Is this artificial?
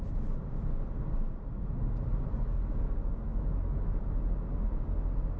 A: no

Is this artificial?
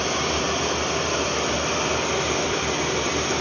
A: yes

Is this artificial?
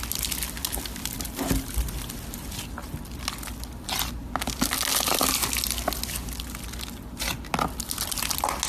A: no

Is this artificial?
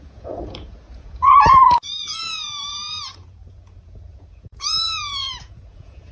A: yes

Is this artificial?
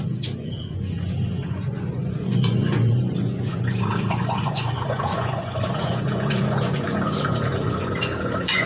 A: yes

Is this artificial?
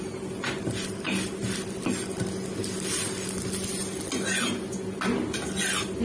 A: no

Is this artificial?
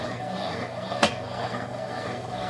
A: yes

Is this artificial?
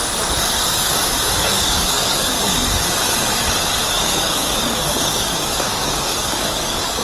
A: yes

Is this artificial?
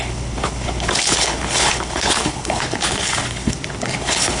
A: yes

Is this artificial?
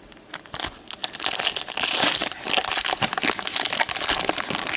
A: no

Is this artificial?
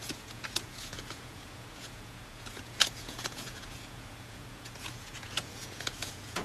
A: yes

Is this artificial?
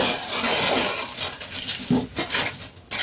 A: no